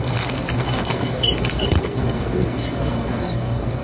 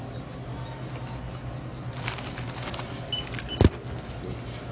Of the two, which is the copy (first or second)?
first